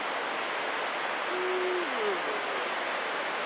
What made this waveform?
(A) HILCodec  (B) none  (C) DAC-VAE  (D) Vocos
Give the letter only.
B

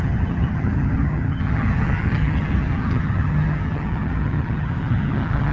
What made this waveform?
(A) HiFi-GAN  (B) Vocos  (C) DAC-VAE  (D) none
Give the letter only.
A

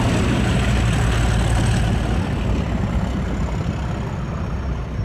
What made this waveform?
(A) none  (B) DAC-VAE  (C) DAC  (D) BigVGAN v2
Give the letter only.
A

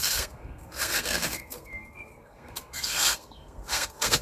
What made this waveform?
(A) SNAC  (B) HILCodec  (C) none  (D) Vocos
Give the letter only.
A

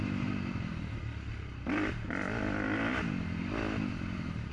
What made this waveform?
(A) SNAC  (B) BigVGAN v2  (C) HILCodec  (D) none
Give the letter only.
D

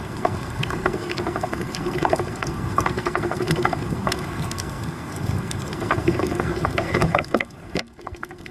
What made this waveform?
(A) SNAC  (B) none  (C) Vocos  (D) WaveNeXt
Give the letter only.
A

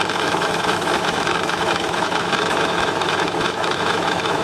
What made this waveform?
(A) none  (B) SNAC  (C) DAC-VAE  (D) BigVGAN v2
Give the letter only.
C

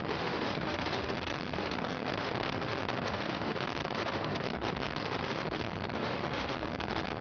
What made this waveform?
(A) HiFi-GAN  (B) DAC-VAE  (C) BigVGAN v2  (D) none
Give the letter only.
B